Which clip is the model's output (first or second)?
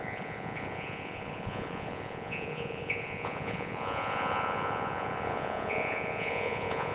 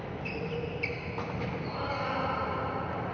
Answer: first